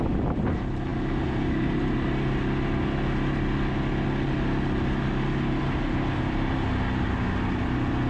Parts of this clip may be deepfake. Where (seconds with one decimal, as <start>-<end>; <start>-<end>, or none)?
none